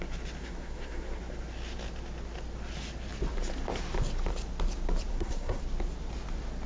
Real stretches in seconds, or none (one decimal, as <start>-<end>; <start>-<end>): 0.0-0.4; 1.2-5.1; 5.6-6.7